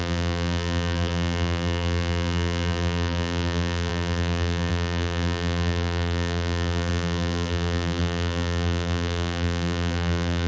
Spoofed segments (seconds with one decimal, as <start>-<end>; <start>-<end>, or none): 0.0-10.5